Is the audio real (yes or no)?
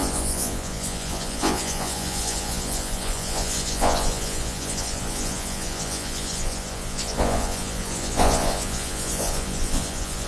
no